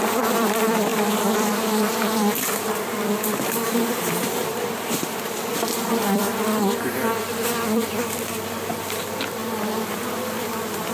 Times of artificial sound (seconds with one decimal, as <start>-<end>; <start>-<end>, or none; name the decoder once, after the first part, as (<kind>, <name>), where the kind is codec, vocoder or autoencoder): 0.0-10.9 (vocoder, BigVGAN v2)